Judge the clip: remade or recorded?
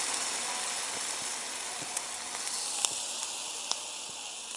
recorded